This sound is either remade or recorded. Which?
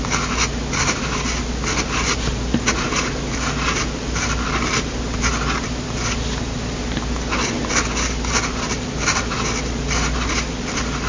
recorded